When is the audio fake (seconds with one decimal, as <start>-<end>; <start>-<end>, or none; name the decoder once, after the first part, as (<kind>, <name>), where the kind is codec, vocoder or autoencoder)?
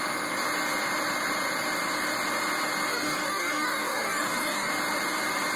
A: 2.9-4.7 (codec, DAC)